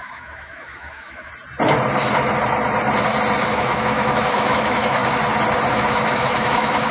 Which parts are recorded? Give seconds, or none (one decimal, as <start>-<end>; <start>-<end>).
1.3-3.5; 5.0-5.7